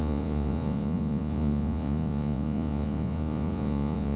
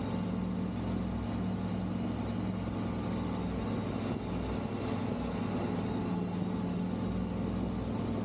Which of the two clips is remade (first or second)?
first